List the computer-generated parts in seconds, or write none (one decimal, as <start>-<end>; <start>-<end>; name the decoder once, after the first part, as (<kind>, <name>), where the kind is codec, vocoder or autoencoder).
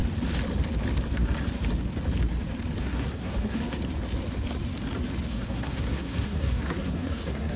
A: 2.8-3.8 (codec, SNAC); 5.3-7.6